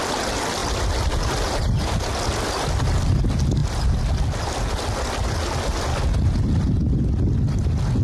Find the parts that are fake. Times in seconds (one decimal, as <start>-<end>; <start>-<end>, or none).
none